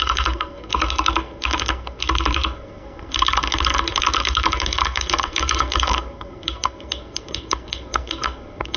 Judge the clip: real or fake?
fake